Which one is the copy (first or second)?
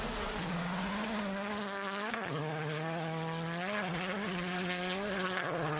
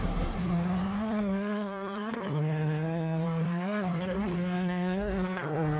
second